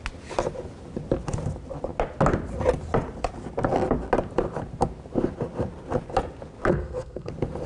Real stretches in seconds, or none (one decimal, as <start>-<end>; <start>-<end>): 0.0-6.7; 7.3-7.7